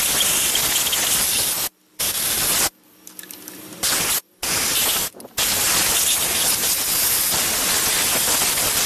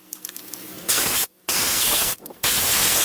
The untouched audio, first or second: first